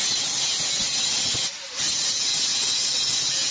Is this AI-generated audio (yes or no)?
no